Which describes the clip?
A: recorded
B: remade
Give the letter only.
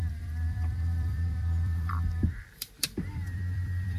B